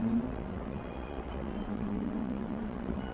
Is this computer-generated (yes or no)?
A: yes